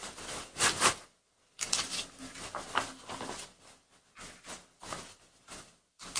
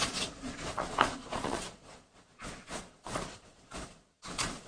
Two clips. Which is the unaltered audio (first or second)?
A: first